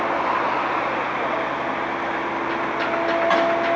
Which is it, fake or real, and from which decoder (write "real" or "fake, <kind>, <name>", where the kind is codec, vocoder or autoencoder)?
real